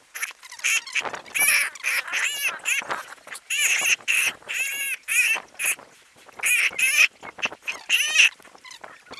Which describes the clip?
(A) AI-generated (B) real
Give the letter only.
B